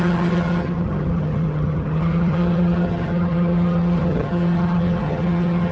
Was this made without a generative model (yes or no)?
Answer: no